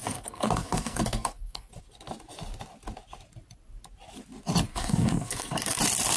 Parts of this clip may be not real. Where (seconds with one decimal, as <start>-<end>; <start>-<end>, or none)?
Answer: 0.0-1.7; 4.7-5.8

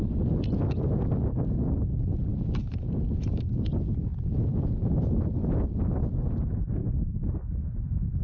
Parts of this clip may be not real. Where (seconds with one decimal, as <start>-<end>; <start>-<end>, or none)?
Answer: 6.8-8.2

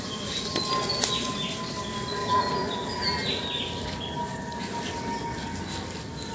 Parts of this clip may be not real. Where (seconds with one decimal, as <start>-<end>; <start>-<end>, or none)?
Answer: 2.2-3.3

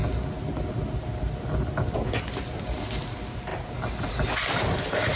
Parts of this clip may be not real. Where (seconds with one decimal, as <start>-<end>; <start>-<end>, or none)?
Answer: none

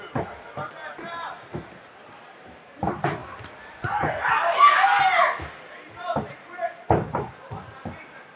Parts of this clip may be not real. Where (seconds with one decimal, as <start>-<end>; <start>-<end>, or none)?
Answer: none

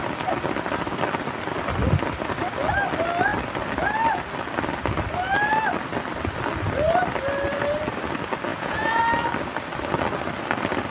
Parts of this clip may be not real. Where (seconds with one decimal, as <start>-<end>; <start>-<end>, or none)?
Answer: 8.5-9.0